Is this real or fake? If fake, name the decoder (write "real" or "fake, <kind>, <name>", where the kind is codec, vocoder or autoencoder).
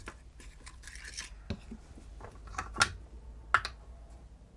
real